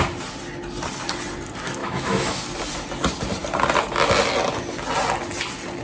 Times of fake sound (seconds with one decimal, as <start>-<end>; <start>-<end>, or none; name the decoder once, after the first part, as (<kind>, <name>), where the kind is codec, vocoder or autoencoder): 1.8-2.4 (autoencoder, DAC-VAE)